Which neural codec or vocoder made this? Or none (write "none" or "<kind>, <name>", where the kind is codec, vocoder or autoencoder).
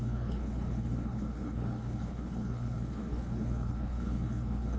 codec, HILCodec